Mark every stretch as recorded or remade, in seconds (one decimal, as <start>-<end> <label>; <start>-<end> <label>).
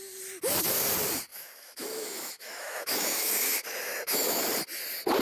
0.0-1.3 recorded; 1.3-4.4 remade; 4.4-5.2 recorded